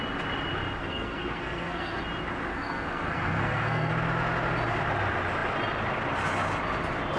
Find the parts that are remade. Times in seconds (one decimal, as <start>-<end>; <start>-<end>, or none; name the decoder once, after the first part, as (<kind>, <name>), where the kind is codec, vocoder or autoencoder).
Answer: 0.8-2.0 (codec, SNAC); 2.5-3.9